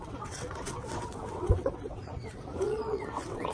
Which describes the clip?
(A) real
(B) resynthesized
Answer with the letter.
B